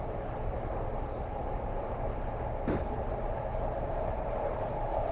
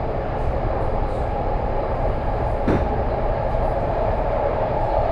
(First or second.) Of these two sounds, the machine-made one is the second